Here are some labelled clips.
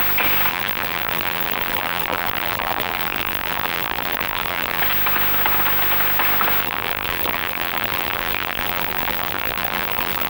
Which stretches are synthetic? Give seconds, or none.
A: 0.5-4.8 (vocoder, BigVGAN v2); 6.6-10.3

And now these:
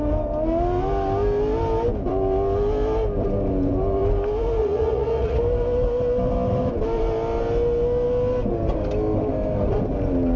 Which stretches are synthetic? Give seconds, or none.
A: 4.6-5.4 (vocoder, Vocos)

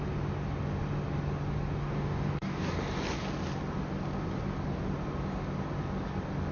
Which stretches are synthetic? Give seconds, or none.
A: 1.8-2.7 (codec, DAC)